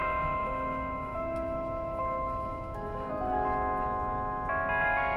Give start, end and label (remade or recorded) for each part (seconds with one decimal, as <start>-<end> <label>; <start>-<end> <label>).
0.0-3.1 remade; 3.1-5.2 recorded